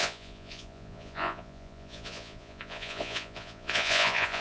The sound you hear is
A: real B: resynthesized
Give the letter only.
B